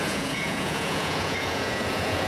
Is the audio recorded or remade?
remade